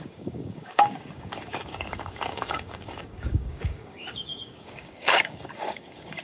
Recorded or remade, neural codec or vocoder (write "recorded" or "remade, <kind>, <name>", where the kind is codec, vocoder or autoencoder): remade, codec, DAC